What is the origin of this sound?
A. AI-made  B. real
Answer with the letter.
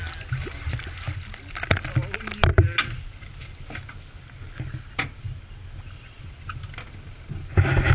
B